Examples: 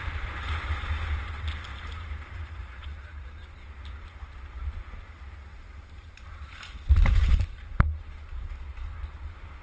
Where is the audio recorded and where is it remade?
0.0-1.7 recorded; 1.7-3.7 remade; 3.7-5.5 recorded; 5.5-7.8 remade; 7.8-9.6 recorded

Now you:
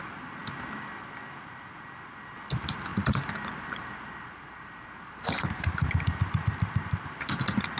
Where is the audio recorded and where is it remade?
0.0-2.9 recorded; 2.9-7.0 remade; 7.0-7.8 recorded

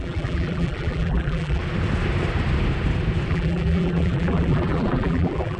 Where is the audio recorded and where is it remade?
0.0-1.6 remade; 1.6-3.3 recorded; 3.3-5.6 remade

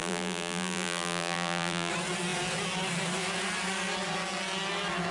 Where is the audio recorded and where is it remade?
0.0-1.9 remade; 1.9-5.1 recorded